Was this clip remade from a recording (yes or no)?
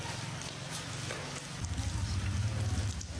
no